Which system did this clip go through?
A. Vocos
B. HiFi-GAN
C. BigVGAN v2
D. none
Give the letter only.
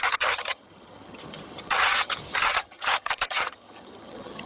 B